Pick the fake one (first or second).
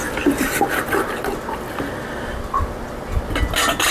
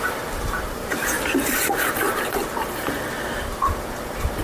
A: second